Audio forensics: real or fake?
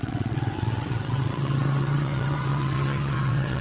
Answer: fake